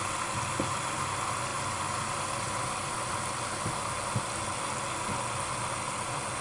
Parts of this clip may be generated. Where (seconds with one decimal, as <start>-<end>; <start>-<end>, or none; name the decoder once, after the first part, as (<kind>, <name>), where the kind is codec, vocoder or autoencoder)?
1.5-3.2 (vocoder, BigVGAN v2)